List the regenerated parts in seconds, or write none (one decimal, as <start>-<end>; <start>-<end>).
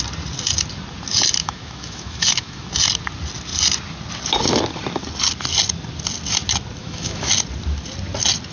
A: 1.4-2.7; 6.8-7.3